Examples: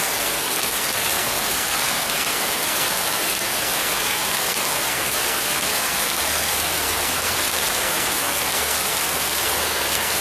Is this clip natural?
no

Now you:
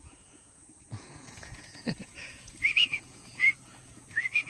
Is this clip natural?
no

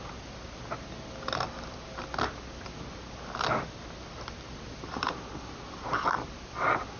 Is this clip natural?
yes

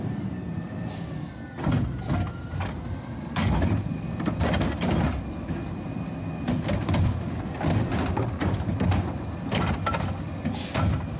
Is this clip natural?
yes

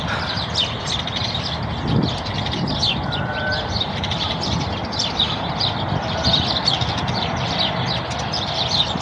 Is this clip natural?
no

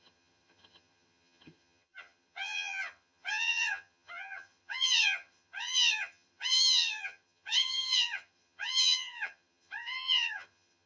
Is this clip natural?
no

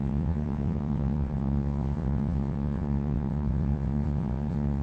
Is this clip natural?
no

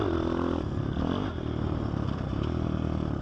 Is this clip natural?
yes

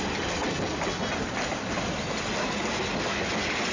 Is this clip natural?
yes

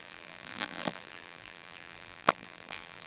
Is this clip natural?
no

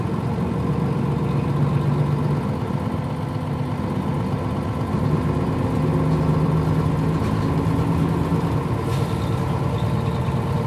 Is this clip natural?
yes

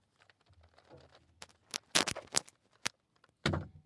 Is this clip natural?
yes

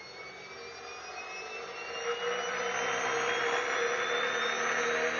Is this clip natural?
yes